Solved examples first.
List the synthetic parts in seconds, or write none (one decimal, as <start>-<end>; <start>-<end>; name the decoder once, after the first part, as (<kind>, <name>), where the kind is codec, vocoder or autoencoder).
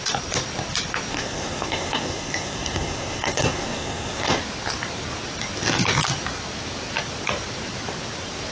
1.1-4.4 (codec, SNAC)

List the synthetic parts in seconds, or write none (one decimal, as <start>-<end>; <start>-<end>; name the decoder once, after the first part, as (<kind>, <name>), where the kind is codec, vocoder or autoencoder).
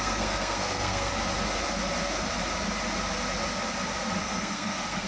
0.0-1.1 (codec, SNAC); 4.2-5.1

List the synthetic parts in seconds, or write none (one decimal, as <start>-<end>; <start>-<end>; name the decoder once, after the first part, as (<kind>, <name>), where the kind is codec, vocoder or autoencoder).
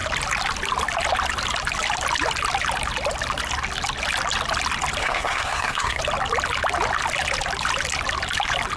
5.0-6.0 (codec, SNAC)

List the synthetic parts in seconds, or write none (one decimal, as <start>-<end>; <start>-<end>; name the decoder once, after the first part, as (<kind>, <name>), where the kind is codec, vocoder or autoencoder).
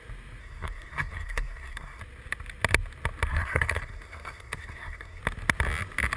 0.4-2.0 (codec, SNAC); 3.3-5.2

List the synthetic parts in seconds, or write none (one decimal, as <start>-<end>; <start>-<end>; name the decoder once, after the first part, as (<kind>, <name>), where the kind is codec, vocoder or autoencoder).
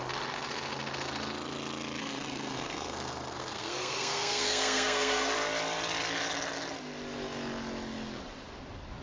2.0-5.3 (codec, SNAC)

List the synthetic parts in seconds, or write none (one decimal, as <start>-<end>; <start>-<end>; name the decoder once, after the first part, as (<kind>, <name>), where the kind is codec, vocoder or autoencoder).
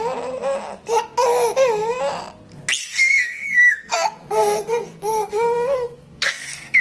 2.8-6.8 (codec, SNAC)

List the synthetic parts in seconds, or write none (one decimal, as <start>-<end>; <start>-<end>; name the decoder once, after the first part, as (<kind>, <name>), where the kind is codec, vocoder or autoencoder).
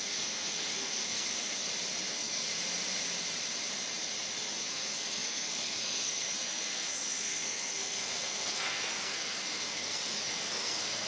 0.0-1.6 (codec, SNAC); 2.1-2.5; 4.6-11.1